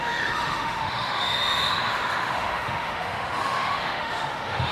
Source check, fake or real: fake